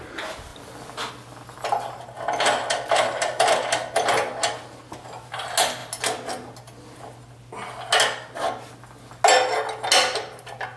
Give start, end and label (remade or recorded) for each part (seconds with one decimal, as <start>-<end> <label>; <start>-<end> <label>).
0.0-10.8 recorded